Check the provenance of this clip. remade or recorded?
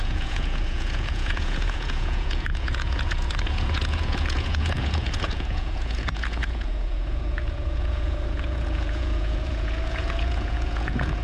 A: remade